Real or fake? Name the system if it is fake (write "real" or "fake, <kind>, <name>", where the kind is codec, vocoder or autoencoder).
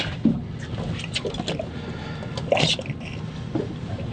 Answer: real